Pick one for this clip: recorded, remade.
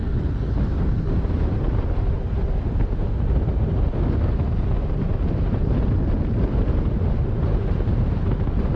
recorded